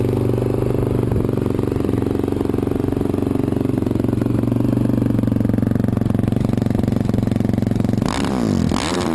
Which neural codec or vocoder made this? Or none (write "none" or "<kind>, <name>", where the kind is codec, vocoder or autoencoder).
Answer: none